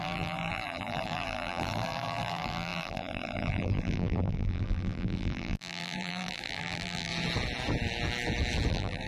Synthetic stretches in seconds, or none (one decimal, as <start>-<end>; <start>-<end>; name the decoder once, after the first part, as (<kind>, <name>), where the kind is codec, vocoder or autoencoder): 0.0-7.1 (vocoder, BigVGAN v2); 8.7-9.1